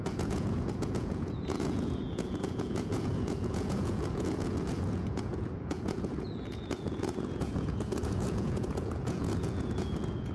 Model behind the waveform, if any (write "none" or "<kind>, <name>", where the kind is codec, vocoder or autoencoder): vocoder, Vocos